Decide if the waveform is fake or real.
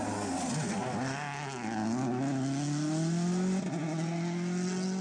real